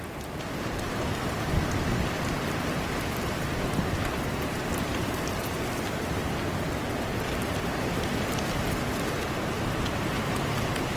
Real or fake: real